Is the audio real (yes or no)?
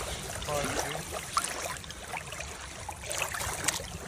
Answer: yes